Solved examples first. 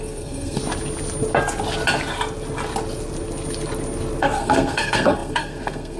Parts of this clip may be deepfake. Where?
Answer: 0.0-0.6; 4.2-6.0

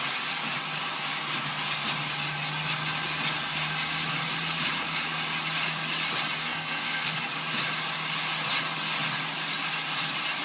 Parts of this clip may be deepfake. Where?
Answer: 6.4-7.2

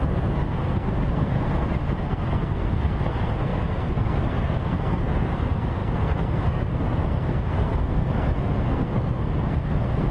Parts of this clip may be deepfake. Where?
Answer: 0.0-10.1

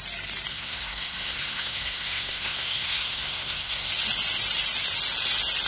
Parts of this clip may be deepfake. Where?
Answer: 0.5-3.9